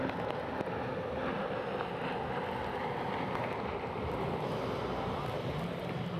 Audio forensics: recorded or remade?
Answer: recorded